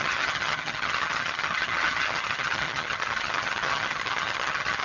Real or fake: fake